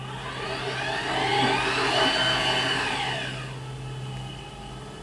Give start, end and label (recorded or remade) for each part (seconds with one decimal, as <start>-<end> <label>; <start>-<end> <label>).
0.0-5.0 recorded